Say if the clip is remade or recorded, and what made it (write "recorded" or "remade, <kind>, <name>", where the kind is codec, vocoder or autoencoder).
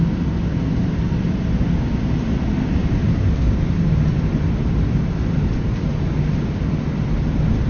recorded